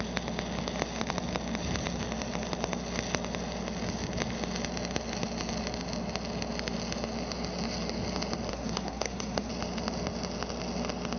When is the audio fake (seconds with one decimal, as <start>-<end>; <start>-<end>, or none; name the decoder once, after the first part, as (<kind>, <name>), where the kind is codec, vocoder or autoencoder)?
8.5-9.5 (codec, SNAC)